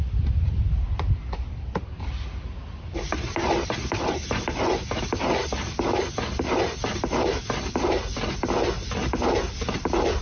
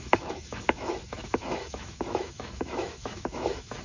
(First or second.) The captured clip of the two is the first